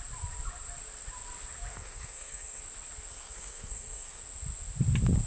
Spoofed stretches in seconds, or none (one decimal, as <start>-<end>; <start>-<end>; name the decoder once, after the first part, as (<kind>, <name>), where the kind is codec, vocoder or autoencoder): 1.7-2.6 (codec, SNAC); 3.1-4.2